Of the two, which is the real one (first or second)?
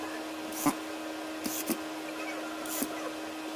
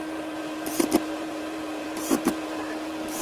first